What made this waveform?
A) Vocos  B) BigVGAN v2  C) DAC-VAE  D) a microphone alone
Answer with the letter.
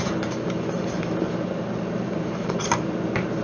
B